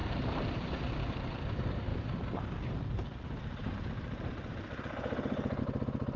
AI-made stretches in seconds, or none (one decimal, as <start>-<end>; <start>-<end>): 0.0-0.9; 1.9-5.6